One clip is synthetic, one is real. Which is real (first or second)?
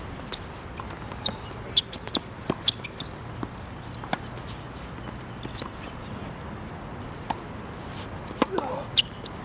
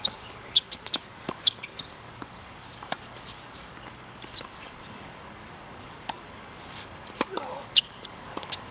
first